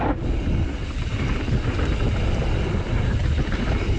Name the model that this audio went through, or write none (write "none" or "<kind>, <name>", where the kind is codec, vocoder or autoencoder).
none